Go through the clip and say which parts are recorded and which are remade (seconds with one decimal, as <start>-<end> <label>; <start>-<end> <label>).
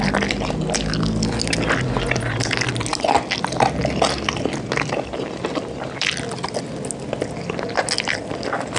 0.0-8.8 recorded